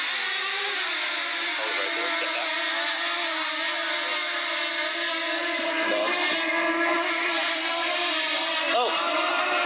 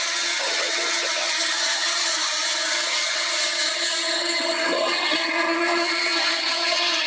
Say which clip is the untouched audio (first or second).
first